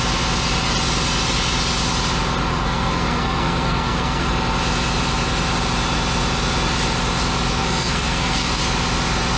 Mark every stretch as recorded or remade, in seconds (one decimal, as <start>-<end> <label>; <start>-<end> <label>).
0.0-2.5 recorded; 2.5-4.3 remade; 4.3-7.6 recorded; 7.6-8.6 remade; 8.6-9.4 recorded